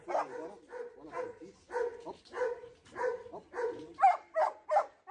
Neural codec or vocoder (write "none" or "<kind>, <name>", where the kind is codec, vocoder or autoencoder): none